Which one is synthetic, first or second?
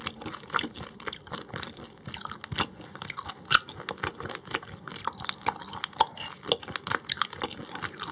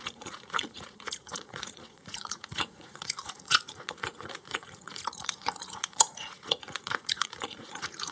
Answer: second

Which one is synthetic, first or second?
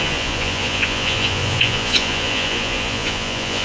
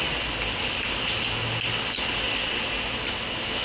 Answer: first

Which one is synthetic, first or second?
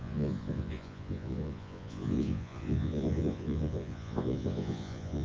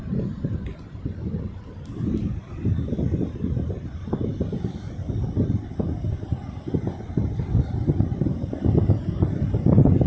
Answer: first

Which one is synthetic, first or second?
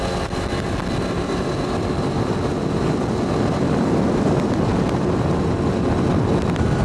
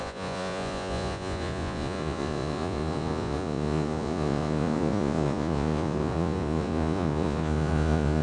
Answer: second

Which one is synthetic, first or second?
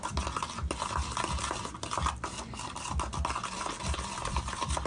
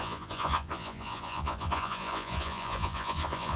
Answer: second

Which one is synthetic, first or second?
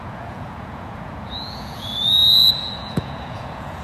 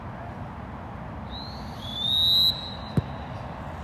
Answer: first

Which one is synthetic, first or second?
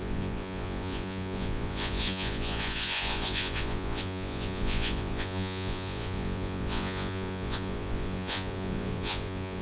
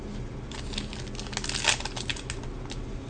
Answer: first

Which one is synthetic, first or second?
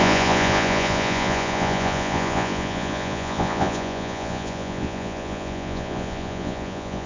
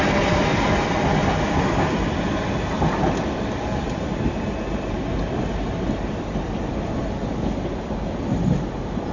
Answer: first